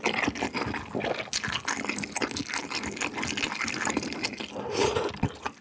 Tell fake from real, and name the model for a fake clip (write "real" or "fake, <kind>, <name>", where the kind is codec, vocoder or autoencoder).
real